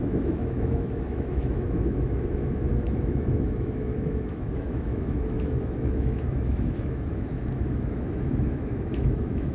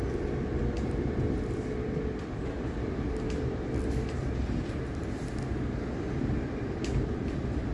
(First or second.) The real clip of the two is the second